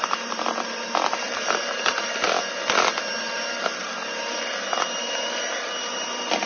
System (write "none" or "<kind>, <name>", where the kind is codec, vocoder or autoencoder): vocoder, BigVGAN v2